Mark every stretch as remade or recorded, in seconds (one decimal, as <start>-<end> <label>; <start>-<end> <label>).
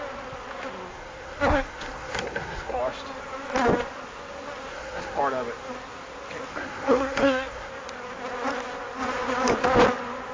0.0-0.9 recorded; 0.9-2.8 remade; 2.8-4.7 recorded; 4.7-5.2 remade; 5.2-6.5 recorded; 6.5-7.7 remade; 7.7-10.3 recorded